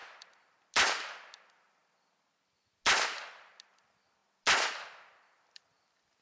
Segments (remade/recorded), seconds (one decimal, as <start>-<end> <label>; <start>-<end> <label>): 0.0-6.2 recorded